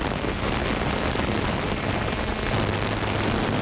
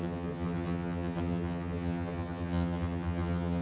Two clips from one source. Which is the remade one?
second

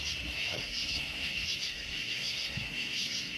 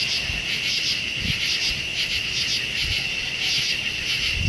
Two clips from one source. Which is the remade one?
first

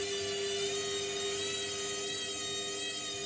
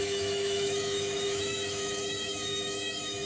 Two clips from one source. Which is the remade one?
second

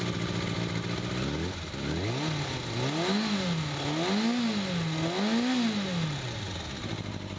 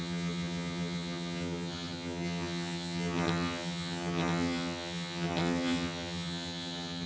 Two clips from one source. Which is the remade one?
second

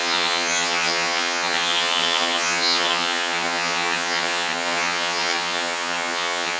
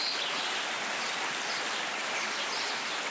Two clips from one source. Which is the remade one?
first